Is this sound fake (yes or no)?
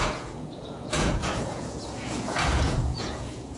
yes